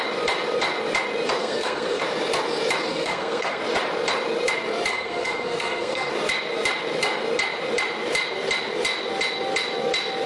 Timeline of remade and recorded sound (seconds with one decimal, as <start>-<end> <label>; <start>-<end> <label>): 0.0-1.4 recorded; 1.4-2.0 remade; 2.0-2.9 recorded; 2.9-3.6 remade; 3.6-4.9 recorded; 4.9-6.1 remade; 6.1-10.3 recorded